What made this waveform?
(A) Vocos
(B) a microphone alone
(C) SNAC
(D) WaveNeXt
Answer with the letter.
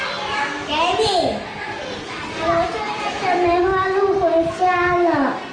B